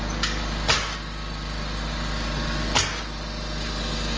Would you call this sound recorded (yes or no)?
yes